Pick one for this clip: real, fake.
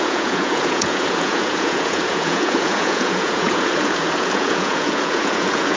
fake